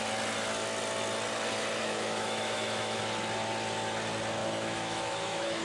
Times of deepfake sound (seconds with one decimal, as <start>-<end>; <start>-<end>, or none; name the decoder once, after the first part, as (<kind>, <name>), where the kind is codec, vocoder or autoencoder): 1.8-3.0 (autoencoder, DAC-VAE); 4.4-5.6